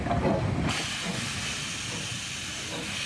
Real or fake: real